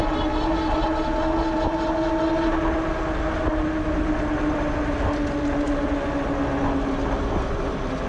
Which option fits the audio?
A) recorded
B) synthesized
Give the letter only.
A